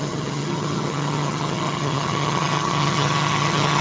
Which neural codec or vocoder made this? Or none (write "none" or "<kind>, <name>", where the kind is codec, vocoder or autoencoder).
vocoder, HiFi-GAN